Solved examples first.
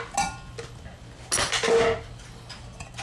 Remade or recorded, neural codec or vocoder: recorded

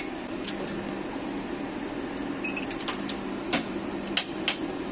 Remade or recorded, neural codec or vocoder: recorded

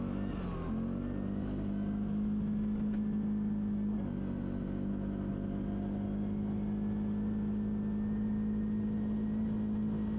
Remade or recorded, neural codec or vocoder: recorded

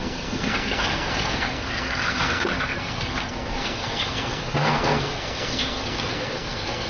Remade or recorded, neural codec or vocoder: remade, codec, SNAC